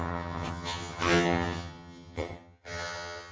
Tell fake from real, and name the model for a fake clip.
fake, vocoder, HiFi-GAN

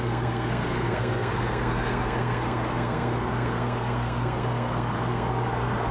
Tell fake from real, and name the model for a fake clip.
fake, codec, SNAC